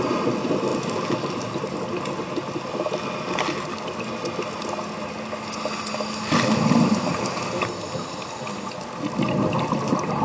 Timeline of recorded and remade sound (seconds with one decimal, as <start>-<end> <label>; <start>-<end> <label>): 0.0-10.2 recorded